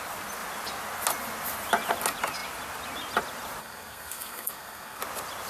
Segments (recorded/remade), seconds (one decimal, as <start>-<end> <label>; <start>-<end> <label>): 0.0-3.6 recorded; 3.6-5.0 remade; 5.0-5.5 recorded